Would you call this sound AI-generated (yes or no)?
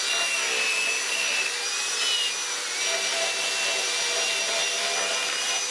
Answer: no